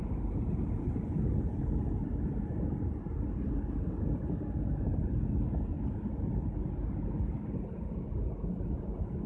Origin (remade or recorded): recorded